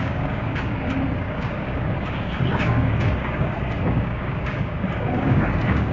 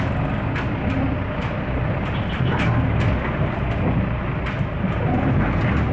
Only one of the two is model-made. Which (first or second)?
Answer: first